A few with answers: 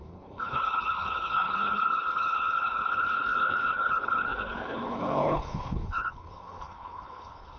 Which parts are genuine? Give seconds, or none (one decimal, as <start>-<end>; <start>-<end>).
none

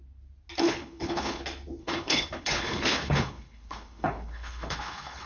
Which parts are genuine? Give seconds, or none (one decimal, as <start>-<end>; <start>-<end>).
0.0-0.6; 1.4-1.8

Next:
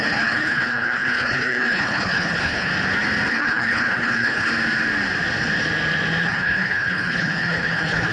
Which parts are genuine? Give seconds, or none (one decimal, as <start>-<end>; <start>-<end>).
2.7-3.3; 4.5-6.2